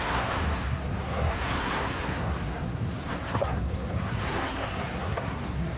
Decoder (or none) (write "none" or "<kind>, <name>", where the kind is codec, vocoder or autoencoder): codec, SNAC